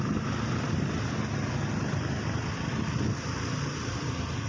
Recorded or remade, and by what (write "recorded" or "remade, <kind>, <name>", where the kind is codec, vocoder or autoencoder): recorded